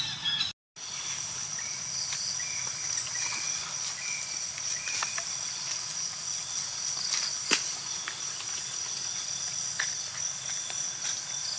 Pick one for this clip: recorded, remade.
recorded